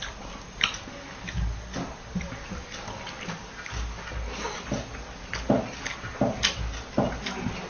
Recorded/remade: recorded